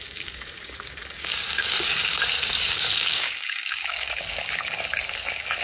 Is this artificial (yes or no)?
yes